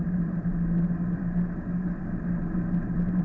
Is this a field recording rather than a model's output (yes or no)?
yes